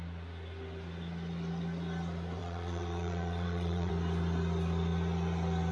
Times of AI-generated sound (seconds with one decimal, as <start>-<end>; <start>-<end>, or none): 2.4-3.9